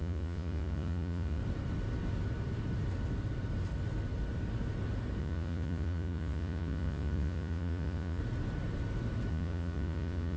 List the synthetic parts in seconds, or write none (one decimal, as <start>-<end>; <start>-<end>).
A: 0.0-1.4; 5.2-8.2; 9.3-10.4